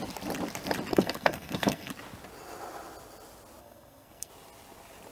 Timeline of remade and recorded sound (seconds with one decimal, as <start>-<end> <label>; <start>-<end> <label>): 0.0-0.9 recorded; 0.9-1.9 remade; 1.9-3.6 recorded; 3.6-4.3 remade; 4.3-5.1 recorded